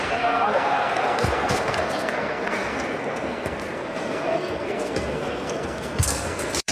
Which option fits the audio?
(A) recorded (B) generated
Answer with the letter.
B